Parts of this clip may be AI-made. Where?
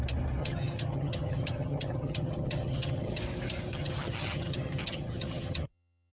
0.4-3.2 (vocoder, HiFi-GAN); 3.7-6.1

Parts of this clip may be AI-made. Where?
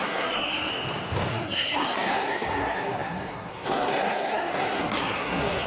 0.0-0.7 (codec, SNAC); 1.3-5.7